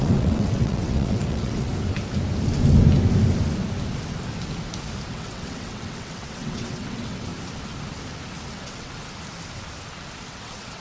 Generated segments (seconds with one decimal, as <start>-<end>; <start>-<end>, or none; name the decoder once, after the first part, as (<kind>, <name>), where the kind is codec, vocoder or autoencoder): 0.0-1.7 (vocoder, WaveNeXt); 5.1-7.3; 8.5-9.0; 10.3-10.8